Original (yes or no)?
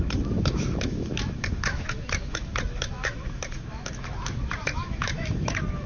no